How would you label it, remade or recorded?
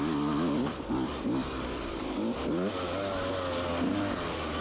recorded